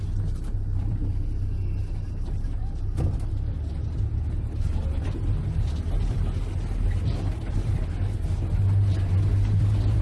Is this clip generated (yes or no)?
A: no